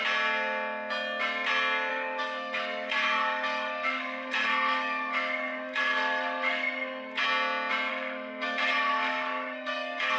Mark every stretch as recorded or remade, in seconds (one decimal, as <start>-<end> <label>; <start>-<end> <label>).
0.0-1.9 recorded; 1.9-7.2 remade; 7.2-7.9 recorded; 7.9-10.2 remade